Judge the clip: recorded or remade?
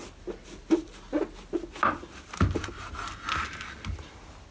recorded